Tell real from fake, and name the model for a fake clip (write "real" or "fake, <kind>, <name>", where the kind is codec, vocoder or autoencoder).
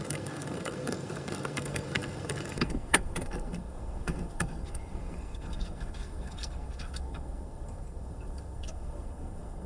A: fake, codec, SNAC